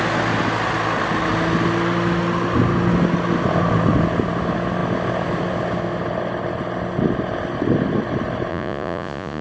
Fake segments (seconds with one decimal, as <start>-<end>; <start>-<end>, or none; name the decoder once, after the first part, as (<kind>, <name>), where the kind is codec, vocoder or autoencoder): 8.5-9.4 (vocoder, Vocos)

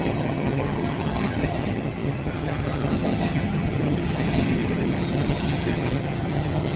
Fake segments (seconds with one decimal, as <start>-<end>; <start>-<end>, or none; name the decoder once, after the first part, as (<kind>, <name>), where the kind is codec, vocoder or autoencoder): 0.0-6.8 (vocoder, HiFi-GAN)

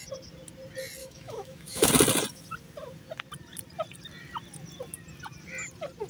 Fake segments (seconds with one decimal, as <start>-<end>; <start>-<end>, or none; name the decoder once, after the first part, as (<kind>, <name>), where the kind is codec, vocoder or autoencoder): 1.0-1.9 (autoencoder, DAC-VAE)

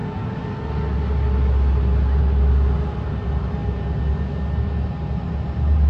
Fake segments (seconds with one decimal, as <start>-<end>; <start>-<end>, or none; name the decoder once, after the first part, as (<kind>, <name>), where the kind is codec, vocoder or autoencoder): none

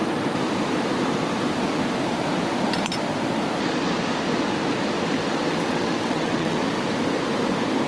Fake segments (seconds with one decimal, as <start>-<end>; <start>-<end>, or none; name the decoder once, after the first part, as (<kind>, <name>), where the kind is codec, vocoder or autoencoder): 5.4-6.6 (vocoder, WaveNeXt)

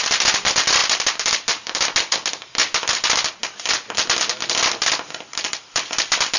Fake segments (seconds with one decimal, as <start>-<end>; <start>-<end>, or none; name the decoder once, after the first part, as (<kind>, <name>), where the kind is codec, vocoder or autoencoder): none